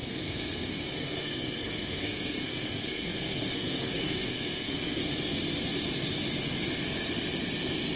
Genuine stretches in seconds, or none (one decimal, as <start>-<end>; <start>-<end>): 5.0-8.0